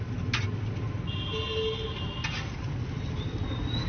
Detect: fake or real real